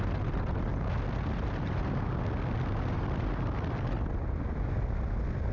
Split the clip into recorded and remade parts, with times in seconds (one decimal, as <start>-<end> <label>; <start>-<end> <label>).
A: 0.0-5.5 recorded